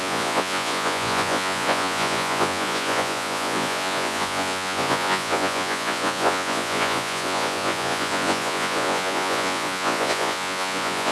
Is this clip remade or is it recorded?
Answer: remade